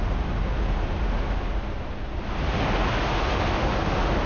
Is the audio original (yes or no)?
yes